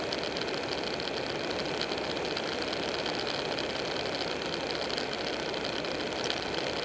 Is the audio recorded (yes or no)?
yes